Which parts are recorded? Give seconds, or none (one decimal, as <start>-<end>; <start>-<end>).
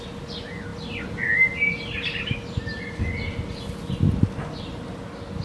0.0-5.4